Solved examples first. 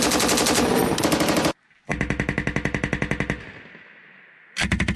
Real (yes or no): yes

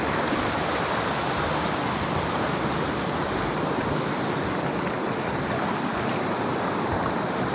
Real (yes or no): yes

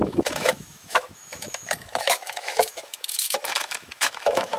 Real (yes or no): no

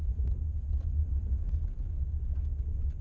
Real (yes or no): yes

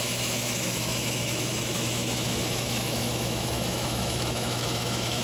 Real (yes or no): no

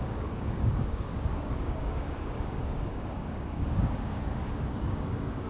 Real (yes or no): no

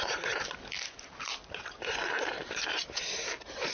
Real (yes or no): no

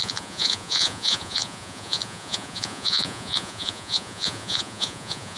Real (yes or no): no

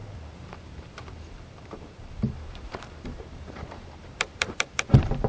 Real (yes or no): no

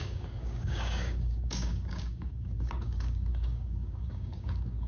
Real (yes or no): no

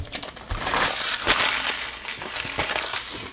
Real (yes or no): yes